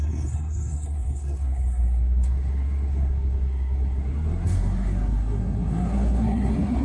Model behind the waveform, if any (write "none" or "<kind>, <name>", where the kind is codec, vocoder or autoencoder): codec, SNAC